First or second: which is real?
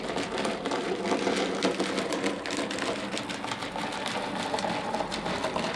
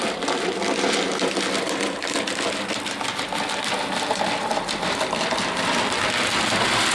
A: first